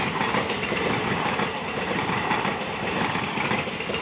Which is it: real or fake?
real